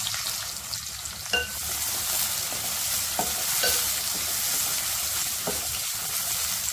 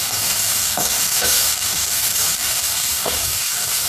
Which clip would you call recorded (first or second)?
first